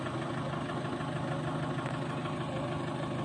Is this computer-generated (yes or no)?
no